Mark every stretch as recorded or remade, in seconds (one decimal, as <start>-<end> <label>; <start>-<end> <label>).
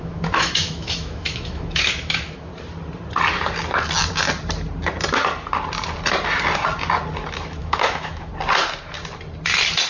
0.0-2.5 remade; 2.5-7.6 recorded; 7.6-8.3 remade; 8.3-9.9 recorded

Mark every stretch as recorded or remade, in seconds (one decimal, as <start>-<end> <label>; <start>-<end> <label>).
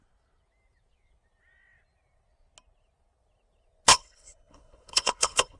0.0-3.9 recorded; 3.9-5.6 remade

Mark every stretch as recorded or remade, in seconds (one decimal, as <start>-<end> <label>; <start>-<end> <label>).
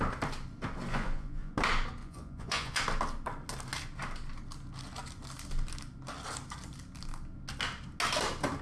0.0-0.9 recorded; 0.9-1.5 remade; 1.5-2.0 recorded; 2.0-2.8 remade; 2.8-8.6 recorded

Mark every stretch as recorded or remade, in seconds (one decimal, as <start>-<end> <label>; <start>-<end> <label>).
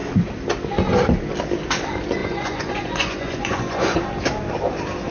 0.0-2.2 recorded; 2.2-4.0 remade; 4.0-5.1 recorded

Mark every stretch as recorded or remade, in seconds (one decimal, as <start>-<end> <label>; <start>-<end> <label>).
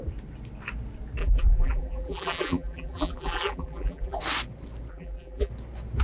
0.0-1.2 recorded; 1.2-4.2 remade; 4.2-4.9 recorded; 4.9-5.5 remade; 5.5-6.0 recorded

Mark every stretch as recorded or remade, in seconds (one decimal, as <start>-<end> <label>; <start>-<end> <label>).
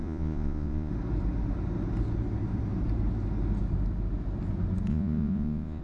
0.0-0.9 remade; 0.9-4.9 recorded; 4.9-5.8 remade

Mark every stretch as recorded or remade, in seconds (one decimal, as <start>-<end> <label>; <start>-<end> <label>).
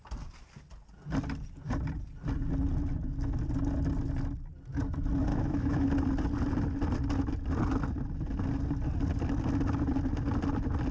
0.0-5.3 recorded; 5.3-5.9 remade; 5.9-10.9 recorded